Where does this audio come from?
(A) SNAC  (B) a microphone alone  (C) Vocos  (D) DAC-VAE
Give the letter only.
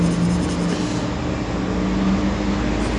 B